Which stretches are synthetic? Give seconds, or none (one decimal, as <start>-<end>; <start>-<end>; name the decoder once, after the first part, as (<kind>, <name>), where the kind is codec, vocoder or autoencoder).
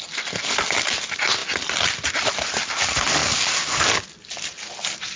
none